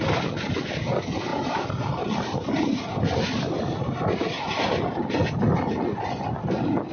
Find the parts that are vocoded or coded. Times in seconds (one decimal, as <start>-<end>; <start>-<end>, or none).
none

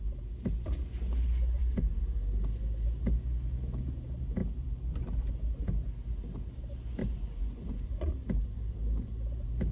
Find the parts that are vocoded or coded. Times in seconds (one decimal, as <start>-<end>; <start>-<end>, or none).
7.0-8.1

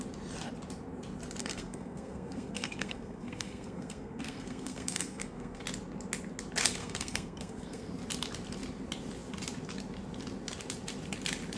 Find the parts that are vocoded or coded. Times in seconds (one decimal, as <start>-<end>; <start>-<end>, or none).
1.4-5.6; 6.8-7.9

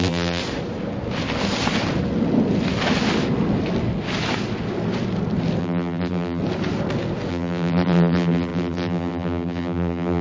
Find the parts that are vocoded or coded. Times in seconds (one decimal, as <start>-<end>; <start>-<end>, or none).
0.0-0.4; 5.6-6.4; 7.3-10.2

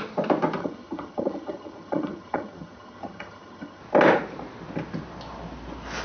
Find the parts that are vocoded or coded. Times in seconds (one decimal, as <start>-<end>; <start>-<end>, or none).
0.6-3.8

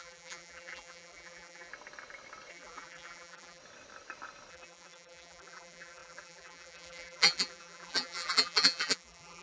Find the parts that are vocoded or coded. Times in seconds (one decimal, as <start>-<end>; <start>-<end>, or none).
0.0-1.7; 2.5-3.6; 4.5-9.4

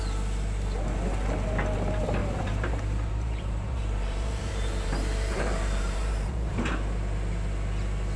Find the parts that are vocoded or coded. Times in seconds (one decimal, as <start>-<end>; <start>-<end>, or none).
2.2-6.7

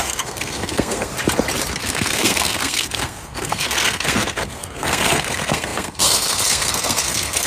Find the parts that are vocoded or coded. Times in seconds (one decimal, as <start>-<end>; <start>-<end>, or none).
0.0-1.1; 1.8-7.5